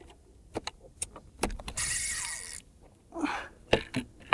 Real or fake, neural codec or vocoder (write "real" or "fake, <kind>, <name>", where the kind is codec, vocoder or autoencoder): real